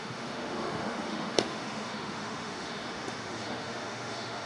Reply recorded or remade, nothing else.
remade